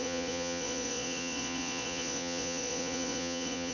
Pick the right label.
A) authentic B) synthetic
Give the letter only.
B